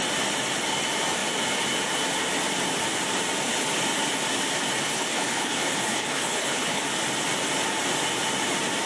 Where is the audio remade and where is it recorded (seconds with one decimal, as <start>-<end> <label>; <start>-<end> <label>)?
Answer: 0.0-4.8 recorded; 4.8-6.8 remade; 6.8-8.9 recorded